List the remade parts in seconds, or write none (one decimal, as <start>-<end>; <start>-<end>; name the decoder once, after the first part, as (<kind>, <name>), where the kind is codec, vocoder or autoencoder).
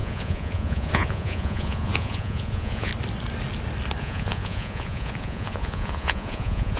0.0-2.9 (vocoder, Vocos); 4.0-6.8